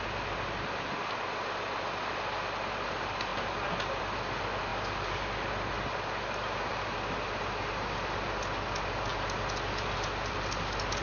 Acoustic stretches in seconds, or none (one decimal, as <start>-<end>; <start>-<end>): 0.0-11.0